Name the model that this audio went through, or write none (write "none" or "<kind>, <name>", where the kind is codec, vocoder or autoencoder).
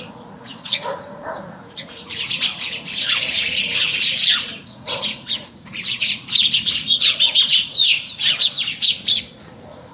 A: vocoder, Vocos